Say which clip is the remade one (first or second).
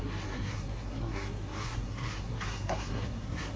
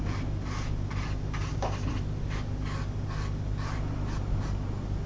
first